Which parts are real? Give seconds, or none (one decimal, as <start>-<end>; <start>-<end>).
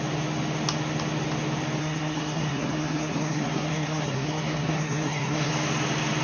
0.0-1.8; 5.5-6.2